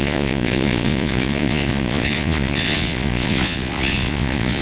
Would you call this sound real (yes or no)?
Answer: no